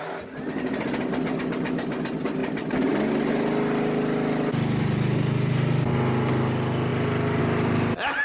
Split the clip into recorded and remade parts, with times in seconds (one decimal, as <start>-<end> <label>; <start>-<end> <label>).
0.0-8.2 recorded